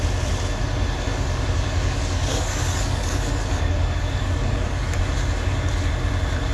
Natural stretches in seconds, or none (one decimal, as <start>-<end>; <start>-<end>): 0.0-1.1; 5.0-6.5